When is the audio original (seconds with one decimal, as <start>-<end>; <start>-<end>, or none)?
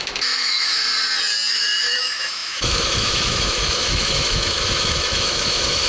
0.8-1.5